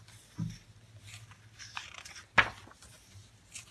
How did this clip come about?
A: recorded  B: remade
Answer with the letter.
A